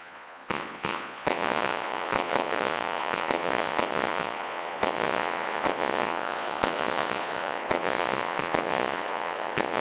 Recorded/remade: remade